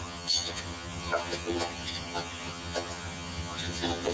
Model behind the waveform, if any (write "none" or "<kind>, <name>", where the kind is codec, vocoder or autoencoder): vocoder, HiFi-GAN